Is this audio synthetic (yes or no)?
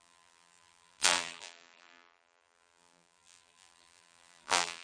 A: yes